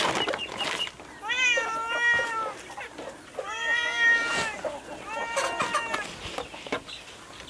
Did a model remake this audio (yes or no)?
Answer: no